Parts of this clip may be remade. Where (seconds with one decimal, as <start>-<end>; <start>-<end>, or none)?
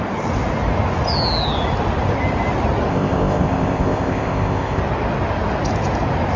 2.9-4.8